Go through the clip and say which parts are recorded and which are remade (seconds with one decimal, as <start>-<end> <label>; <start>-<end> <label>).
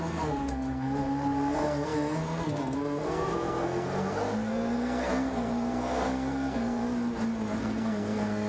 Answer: 0.0-6.8 remade; 6.8-7.6 recorded; 7.6-8.5 remade